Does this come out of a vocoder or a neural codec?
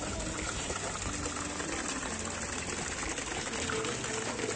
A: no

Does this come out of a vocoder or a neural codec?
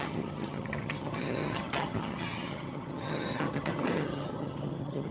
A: yes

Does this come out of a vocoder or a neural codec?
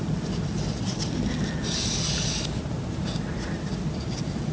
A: no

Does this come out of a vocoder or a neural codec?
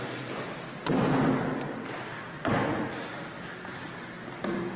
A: no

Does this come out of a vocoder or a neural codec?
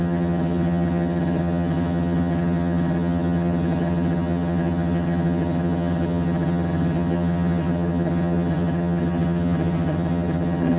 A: yes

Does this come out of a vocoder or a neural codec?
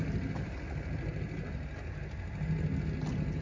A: no